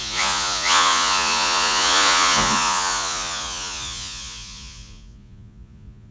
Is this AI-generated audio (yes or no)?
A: yes